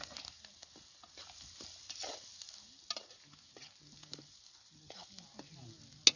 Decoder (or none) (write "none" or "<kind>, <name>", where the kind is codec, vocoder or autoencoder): none